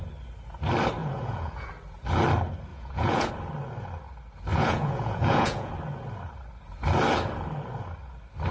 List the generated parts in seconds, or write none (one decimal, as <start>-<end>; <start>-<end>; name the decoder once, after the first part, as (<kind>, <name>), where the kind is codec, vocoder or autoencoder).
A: 1.0-1.7 (vocoder, Vocos); 2.7-3.3; 4.5-5.7